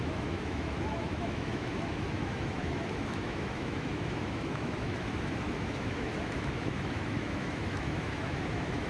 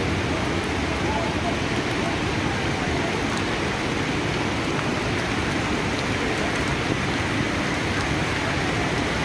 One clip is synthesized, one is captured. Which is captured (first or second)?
second